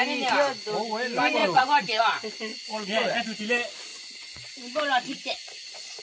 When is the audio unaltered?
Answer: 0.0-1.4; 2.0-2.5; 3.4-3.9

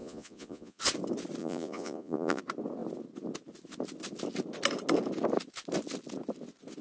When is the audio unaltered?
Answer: 0.8-1.4; 2.4-6.8